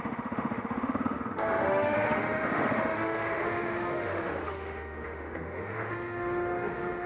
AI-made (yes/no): yes